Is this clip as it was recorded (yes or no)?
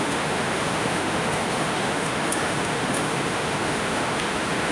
no